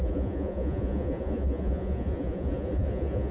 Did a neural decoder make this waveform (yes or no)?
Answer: yes